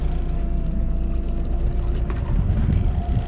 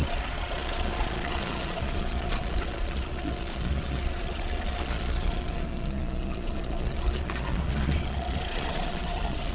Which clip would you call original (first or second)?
first